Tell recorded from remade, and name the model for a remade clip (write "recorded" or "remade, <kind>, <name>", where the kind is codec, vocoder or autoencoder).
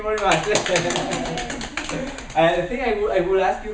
recorded